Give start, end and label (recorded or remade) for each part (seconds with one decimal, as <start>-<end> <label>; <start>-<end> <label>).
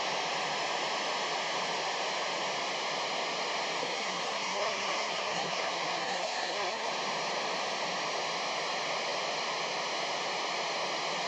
0.0-3.8 recorded; 3.8-6.9 remade; 6.9-11.3 recorded